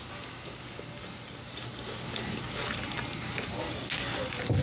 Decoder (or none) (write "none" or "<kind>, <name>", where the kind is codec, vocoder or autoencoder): none